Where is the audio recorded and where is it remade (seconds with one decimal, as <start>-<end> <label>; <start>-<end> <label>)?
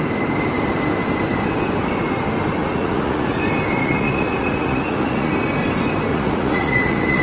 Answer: 0.0-2.6 recorded; 2.6-3.4 remade; 3.4-3.8 recorded; 3.8-5.3 remade; 5.3-6.1 recorded; 6.1-7.2 remade